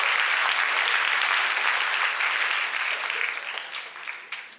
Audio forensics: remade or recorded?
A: recorded